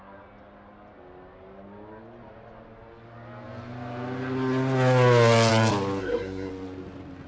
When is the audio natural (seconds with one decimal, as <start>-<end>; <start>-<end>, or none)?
0.0-6.0; 6.5-7.3